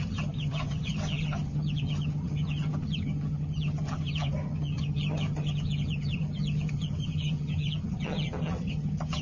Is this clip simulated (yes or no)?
yes